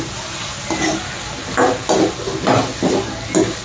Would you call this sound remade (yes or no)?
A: no